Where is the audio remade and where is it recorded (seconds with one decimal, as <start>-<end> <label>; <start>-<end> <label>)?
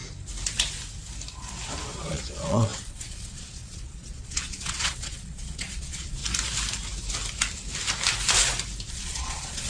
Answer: 0.0-2.0 recorded; 2.0-6.2 remade; 6.2-8.9 recorded; 8.9-9.7 remade